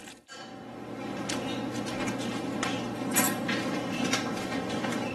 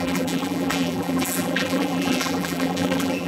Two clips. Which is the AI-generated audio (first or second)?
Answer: second